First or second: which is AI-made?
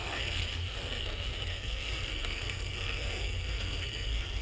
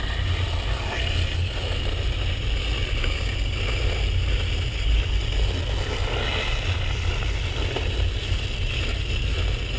first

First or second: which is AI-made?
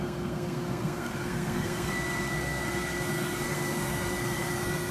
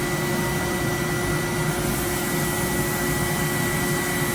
first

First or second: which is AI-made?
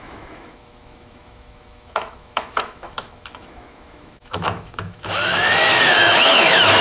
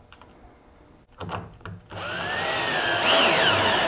first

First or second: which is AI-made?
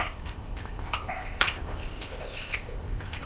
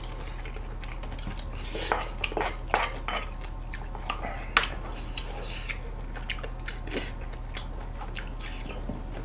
first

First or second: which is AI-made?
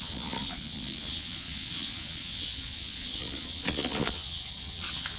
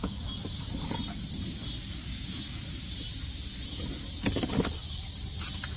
first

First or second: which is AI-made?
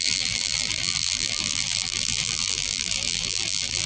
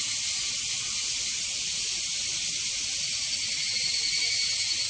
first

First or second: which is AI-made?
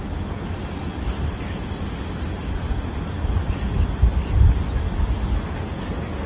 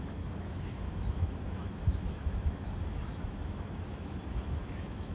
second